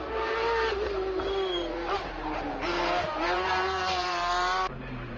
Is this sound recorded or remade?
remade